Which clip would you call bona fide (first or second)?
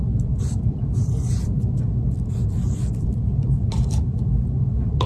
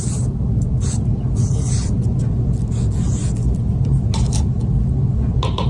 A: second